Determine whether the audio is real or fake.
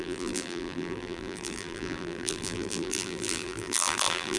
fake